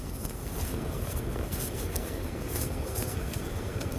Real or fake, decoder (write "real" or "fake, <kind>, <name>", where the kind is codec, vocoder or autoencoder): fake, codec, SNAC